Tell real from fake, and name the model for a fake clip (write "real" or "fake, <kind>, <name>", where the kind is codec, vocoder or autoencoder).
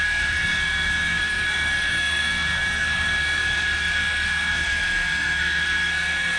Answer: fake, codec, SNAC